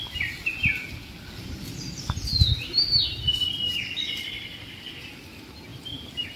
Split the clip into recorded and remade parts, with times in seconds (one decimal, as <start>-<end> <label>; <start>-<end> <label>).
0.0-6.4 recorded